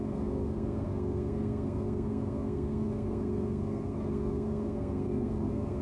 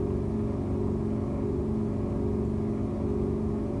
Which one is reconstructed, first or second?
first